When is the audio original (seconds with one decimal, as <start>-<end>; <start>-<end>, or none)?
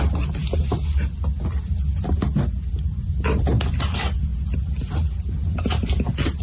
0.0-4.3; 5.9-6.4